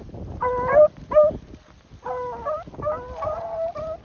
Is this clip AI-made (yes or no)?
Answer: no